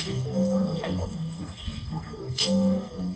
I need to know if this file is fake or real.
fake